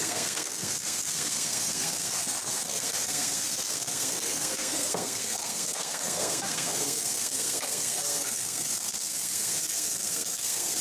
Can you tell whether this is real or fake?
fake